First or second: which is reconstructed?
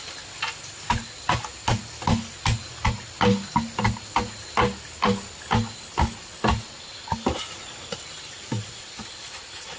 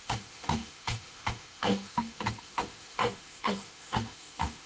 second